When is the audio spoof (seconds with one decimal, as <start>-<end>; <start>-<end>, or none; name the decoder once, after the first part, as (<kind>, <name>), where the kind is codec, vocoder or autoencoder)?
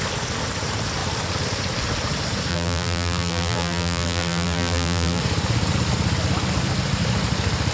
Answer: 2.5-5.2 (vocoder, BigVGAN v2)